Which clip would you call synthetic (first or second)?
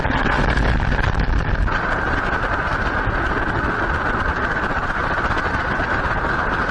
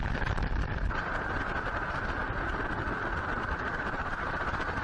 second